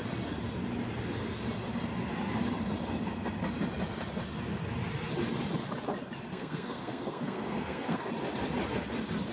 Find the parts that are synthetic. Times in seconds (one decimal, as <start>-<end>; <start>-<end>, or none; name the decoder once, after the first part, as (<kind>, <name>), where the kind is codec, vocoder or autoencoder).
6.3-8.1 (codec, SNAC)